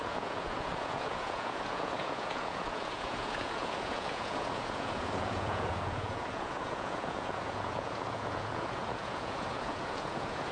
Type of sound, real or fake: fake